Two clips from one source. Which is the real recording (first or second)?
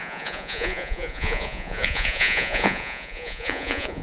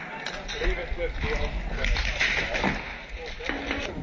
second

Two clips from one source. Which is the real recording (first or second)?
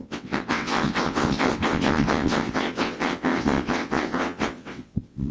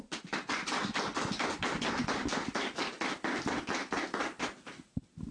second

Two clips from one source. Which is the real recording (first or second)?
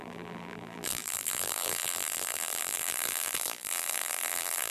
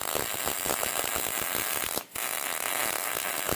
second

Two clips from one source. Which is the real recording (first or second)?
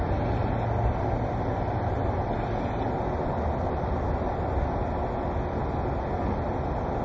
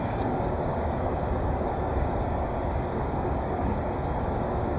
first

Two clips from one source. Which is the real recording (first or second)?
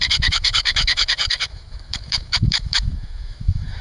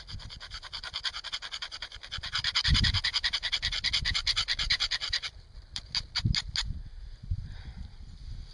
second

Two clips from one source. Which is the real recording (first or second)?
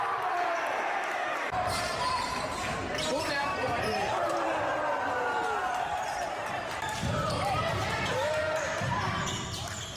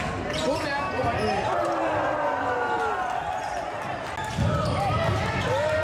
second